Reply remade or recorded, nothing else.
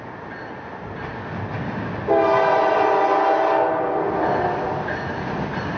recorded